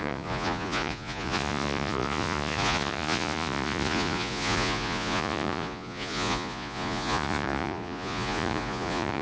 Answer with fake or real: fake